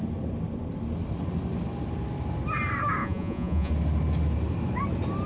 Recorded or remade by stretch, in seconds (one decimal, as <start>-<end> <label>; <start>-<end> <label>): 0.0-3.0 recorded; 3.0-3.7 remade; 3.7-5.3 recorded